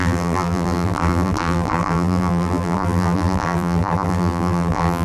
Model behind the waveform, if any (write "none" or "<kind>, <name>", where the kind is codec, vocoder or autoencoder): vocoder, BigVGAN v2